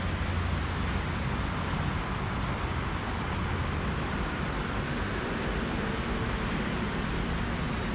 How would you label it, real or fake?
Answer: real